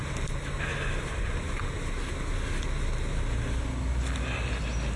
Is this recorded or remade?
recorded